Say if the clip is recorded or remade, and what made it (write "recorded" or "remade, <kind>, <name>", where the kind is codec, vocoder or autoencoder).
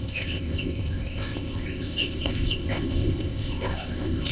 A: remade, codec, ZipCodec